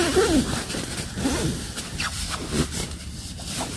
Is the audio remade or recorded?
recorded